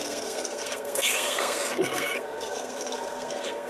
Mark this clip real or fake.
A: fake